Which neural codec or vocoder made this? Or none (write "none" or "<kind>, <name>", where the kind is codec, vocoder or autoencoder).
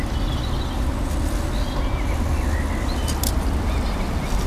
none